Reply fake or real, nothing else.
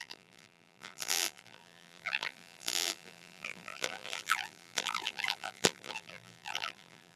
fake